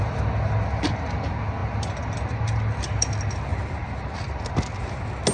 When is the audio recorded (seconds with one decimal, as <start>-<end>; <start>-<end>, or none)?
0.0-5.3